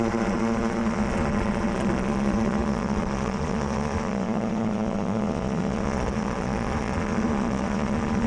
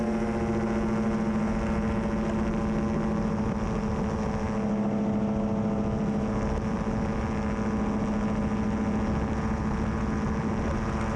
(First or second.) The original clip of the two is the second